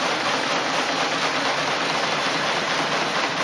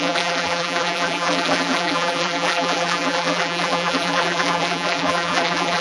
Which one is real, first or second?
first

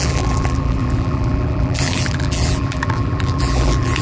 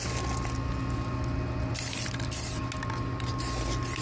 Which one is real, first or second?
second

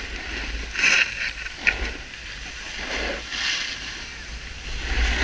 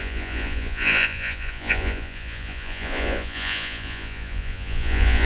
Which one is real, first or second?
first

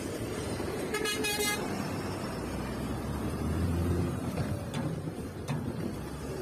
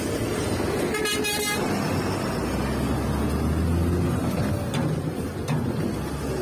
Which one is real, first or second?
second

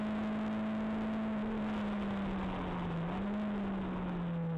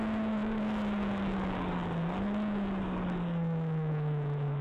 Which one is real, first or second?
first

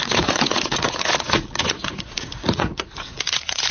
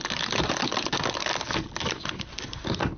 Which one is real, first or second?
second